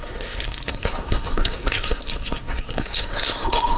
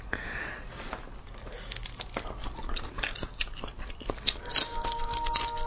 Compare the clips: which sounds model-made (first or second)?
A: first